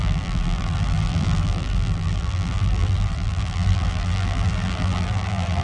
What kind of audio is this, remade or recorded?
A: remade